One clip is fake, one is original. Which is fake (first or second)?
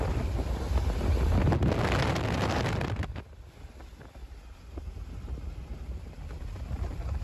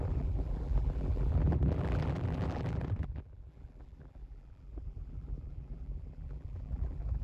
second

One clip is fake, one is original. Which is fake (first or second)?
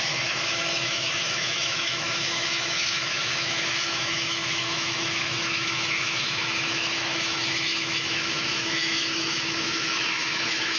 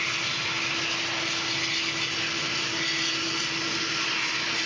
first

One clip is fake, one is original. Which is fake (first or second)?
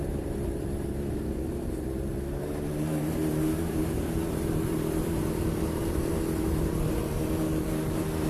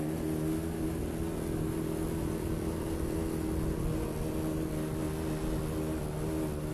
first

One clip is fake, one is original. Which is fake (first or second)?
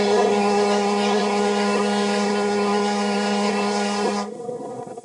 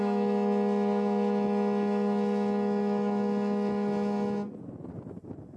first